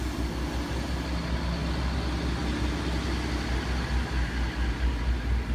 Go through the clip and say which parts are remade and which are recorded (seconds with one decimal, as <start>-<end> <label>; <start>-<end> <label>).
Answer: 0.0-5.5 recorded